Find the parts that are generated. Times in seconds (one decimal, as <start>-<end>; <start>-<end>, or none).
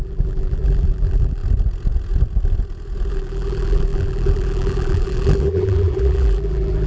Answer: 0.0-1.4; 3.1-6.9